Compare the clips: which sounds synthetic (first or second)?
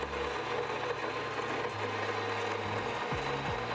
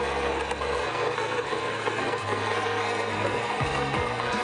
second